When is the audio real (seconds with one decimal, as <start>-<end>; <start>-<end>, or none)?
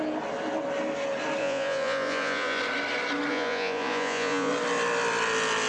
0.0-1.4; 2.6-3.3; 4.5-5.7